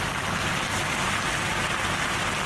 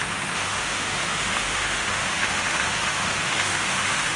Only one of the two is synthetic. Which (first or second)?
second